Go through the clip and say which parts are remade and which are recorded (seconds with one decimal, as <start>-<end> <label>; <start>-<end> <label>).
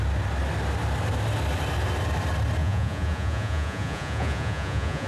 0.0-2.6 recorded; 2.6-5.1 remade